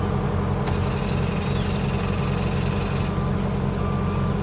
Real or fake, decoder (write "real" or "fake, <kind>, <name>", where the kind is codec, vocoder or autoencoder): real